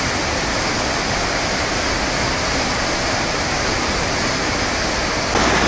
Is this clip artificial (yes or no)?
no